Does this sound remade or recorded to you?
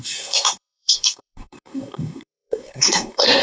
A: remade